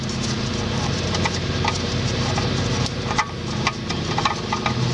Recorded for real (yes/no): yes